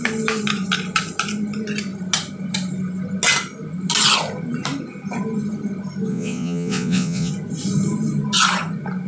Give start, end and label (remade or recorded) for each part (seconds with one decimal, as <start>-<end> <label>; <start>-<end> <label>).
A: 0.0-6.1 recorded; 6.1-7.3 remade; 7.3-9.1 recorded

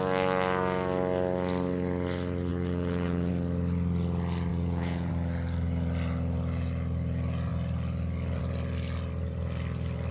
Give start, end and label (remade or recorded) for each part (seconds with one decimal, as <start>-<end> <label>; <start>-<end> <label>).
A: 0.0-2.5 recorded; 2.5-3.3 remade; 3.3-4.5 recorded; 4.5-5.1 remade; 5.1-10.1 recorded

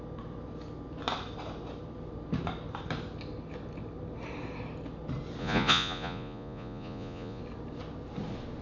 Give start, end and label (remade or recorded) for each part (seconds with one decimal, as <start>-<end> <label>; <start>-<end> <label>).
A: 0.0-5.4 recorded; 5.4-7.4 remade; 7.4-8.6 recorded